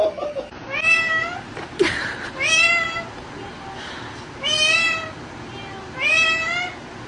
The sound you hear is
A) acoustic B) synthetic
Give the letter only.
A